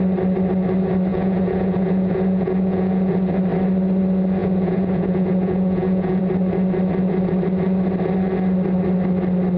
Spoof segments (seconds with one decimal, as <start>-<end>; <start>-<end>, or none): 1.1-3.1; 4.4-6.2